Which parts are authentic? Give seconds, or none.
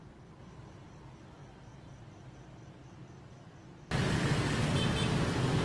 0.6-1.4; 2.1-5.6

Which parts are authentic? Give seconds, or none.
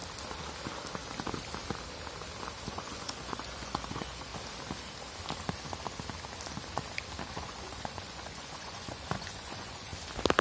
0.0-2.7; 4.3-7.3; 9.9-10.4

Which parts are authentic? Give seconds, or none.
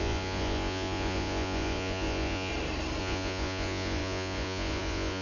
2.5-3.0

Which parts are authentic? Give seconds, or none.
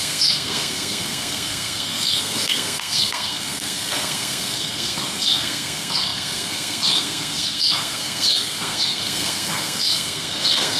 none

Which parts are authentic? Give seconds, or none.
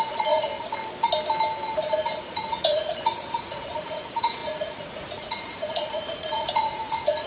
0.5-2.3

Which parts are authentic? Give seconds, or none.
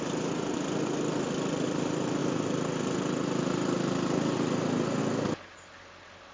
0.0-6.3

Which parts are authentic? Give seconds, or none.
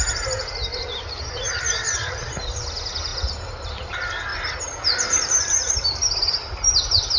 0.0-7.2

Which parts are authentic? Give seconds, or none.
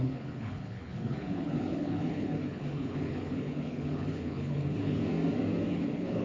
5.0-5.7